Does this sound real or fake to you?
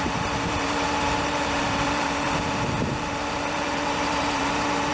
fake